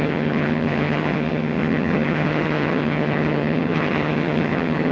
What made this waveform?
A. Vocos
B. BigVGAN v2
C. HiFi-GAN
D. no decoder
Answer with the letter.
C